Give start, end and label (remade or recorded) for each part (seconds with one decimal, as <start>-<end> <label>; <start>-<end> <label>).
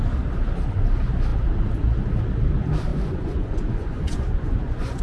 0.0-2.9 recorded; 2.9-5.0 remade